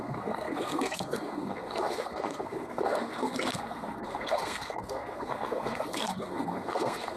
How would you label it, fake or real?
fake